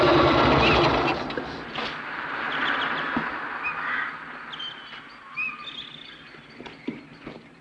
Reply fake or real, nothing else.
real